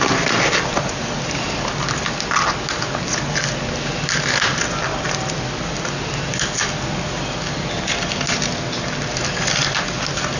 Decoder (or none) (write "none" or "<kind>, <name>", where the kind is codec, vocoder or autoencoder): none